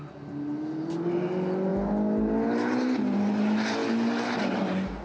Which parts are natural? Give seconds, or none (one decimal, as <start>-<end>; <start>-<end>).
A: 0.0-5.0